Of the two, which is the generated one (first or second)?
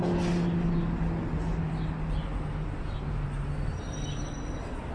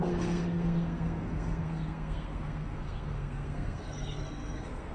second